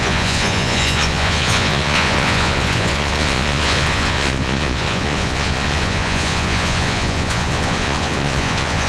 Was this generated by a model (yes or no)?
yes